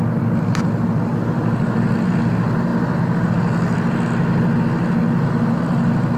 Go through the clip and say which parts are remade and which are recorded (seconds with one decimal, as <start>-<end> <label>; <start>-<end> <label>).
0.0-6.2 recorded